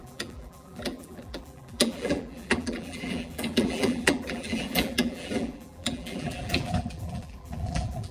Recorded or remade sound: remade